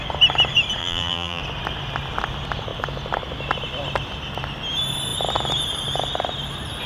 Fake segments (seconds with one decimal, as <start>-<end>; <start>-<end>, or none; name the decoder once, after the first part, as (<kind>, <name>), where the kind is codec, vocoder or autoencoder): 0.8-1.4 (vocoder, BigVGAN v2)